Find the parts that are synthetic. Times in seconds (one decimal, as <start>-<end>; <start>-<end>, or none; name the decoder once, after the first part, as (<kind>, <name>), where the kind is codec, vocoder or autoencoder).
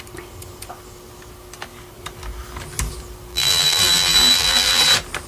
3.3-4.8 (vocoder, BigVGAN v2)